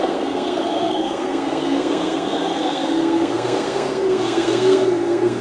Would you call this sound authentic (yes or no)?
no